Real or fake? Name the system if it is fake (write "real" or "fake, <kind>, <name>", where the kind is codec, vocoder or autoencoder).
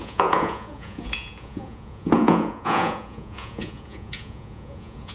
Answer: fake, vocoder, Vocos